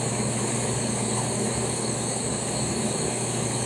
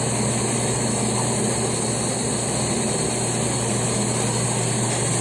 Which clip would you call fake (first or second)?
first